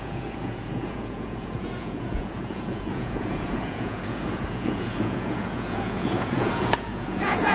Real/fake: fake